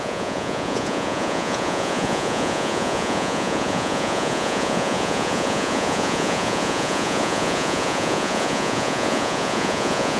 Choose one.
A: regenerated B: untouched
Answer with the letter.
A